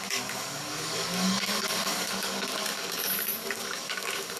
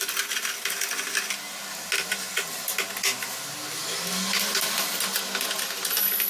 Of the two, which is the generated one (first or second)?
first